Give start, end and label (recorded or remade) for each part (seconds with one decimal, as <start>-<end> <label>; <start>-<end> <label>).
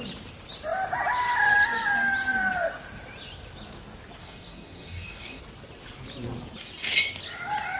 0.0-4.2 recorded; 4.2-5.4 remade; 5.4-7.8 recorded